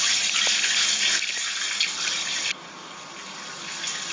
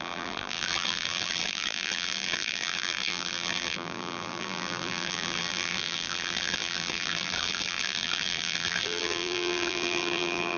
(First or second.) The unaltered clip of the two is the first